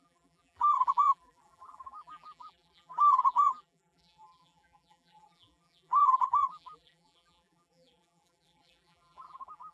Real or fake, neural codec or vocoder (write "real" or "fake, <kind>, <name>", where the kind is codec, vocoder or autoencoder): fake, vocoder, BigVGAN v2